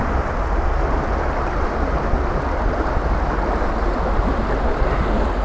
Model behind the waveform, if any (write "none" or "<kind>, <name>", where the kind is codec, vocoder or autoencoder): none